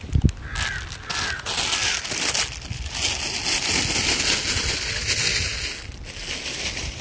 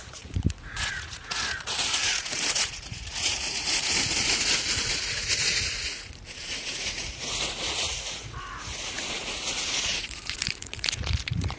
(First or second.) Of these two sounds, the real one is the first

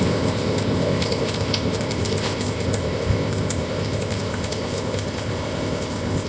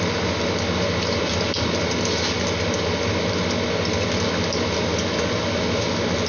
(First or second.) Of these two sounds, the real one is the second